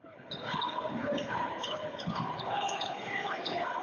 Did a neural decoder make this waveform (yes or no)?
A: yes